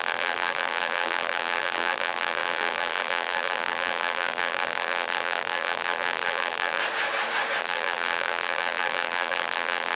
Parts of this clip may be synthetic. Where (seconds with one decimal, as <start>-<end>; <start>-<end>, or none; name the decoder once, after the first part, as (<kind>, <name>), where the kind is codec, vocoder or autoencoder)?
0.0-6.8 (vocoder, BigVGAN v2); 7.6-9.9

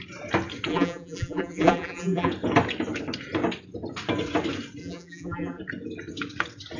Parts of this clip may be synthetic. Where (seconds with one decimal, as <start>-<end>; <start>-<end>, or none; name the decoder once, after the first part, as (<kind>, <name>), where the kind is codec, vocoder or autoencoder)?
0.7-2.3 (vocoder, BigVGAN v2); 4.8-5.6

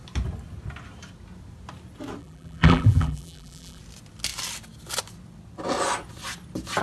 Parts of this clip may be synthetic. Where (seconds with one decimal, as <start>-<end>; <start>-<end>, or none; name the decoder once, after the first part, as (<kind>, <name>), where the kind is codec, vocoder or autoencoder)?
2.2-3.8 (vocoder, BigVGAN v2)

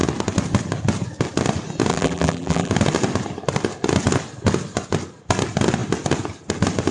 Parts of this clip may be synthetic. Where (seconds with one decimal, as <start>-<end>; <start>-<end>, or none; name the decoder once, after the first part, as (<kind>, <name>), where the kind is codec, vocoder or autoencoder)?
1.9-2.7 (vocoder, BigVGAN v2)

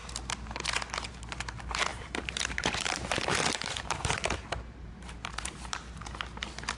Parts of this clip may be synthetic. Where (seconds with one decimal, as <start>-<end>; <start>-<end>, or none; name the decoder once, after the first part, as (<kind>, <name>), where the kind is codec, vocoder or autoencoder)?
1.9-6.0 (vocoder, BigVGAN v2)

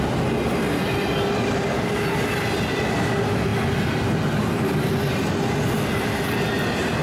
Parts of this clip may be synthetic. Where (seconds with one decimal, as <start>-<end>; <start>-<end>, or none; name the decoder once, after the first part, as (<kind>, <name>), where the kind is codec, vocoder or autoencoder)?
none